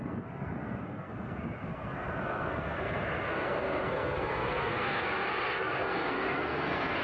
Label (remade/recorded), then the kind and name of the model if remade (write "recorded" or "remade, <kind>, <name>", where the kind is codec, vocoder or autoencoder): remade, codec, SNAC